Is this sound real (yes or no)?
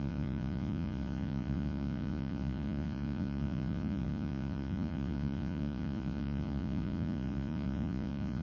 no